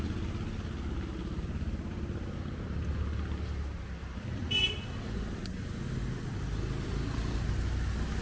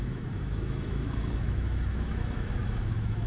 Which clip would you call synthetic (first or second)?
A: second